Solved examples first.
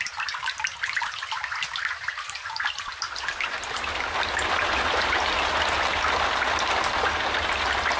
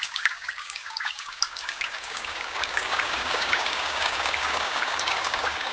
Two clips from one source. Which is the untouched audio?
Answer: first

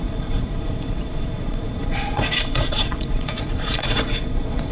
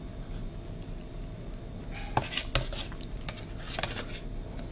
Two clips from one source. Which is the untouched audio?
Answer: second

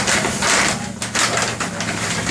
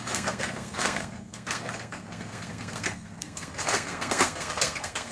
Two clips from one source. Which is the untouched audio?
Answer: first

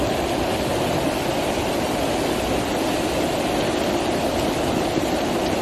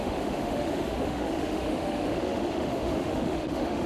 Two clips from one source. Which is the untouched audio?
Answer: first